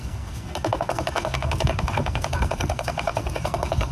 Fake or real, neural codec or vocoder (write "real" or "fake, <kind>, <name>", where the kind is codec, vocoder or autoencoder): fake, codec, SNAC